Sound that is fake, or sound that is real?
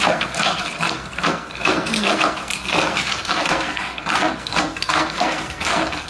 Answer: fake